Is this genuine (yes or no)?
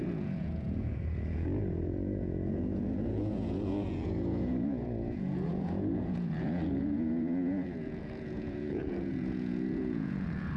no